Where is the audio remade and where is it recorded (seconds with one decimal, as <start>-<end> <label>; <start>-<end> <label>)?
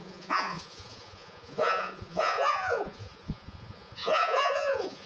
0.0-5.1 remade